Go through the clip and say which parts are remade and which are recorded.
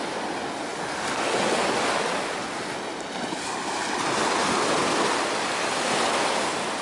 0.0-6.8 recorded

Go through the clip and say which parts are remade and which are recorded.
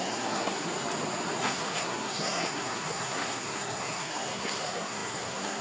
0.0-0.7 remade; 0.7-1.4 recorded; 1.4-5.6 remade